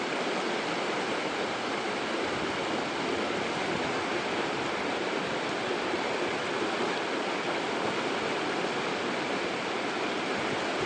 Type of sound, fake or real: real